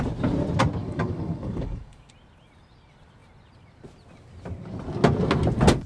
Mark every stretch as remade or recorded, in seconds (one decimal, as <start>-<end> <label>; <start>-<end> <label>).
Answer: 0.0-0.8 recorded; 0.8-2.1 remade; 2.1-5.9 recorded